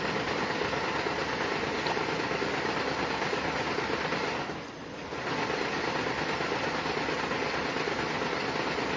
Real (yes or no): yes